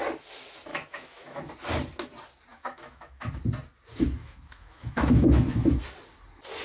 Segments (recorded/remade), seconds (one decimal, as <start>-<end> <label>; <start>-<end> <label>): 0.0-0.7 recorded; 0.7-1.5 remade; 1.5-2.5 recorded; 2.5-3.4 remade; 3.4-4.2 recorded; 4.2-5.8 remade; 5.8-6.6 recorded